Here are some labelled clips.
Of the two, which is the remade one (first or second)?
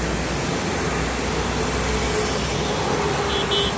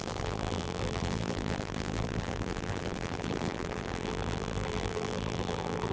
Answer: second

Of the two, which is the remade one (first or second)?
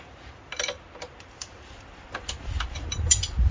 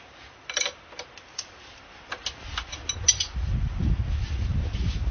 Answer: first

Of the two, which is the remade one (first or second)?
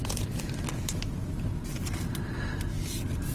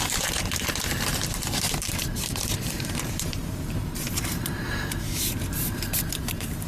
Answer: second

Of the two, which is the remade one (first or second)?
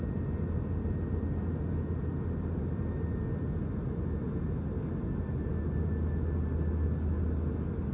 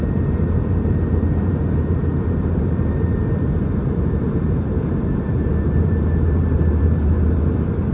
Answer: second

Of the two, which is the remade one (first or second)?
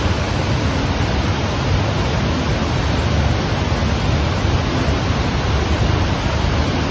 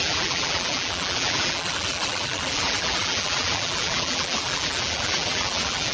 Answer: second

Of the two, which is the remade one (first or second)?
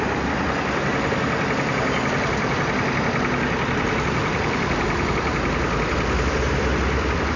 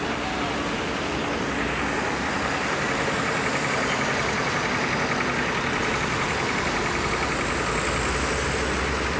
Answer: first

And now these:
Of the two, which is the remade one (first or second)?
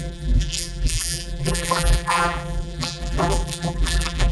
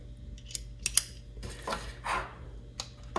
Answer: first